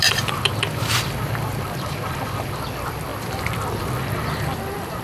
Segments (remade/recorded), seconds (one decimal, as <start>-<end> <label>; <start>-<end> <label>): 0.0-5.0 remade